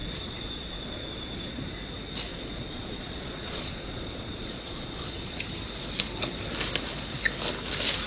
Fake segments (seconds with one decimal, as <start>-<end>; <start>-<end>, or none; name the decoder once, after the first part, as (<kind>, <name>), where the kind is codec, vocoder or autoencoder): 0.0-1.6 (vocoder, Vocos); 2.3-5.4